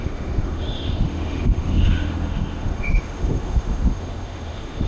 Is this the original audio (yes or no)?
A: no